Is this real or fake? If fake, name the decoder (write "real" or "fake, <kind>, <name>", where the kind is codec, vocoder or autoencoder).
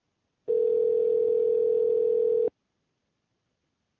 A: real